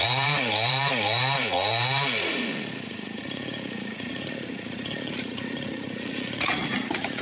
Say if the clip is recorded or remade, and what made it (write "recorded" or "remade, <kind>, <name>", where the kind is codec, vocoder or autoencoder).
remade, vocoder, Vocos